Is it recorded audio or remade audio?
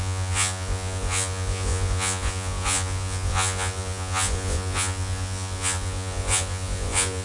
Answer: remade